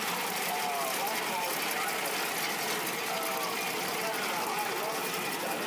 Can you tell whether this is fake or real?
real